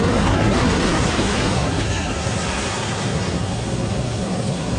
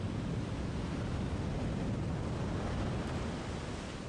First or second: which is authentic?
second